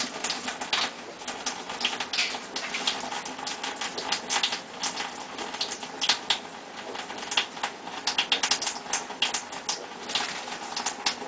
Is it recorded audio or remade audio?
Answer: recorded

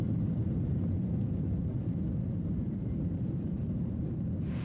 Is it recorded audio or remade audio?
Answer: remade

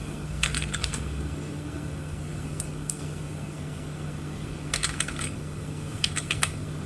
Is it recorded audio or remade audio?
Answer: remade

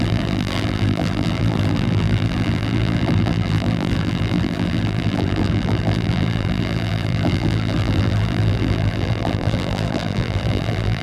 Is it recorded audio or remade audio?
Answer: remade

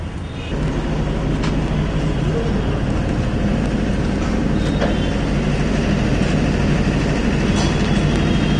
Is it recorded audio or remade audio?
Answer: recorded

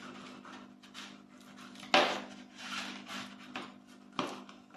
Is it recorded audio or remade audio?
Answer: recorded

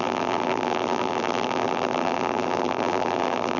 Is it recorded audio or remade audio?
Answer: remade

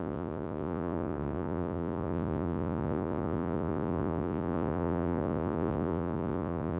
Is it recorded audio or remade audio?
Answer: remade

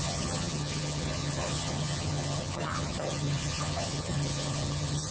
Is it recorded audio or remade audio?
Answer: remade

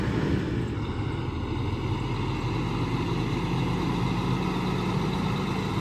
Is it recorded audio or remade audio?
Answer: recorded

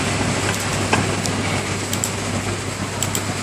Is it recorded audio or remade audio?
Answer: recorded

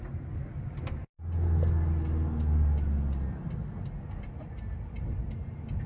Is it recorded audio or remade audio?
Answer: recorded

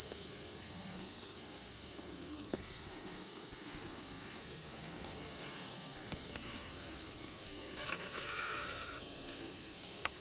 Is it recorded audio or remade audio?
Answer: remade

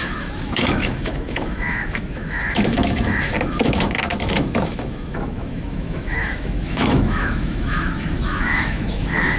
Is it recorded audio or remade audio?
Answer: remade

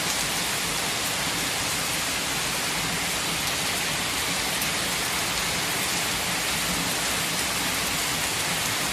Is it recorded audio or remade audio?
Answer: recorded